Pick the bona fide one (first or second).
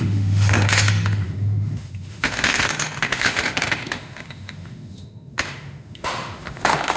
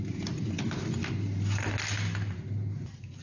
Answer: second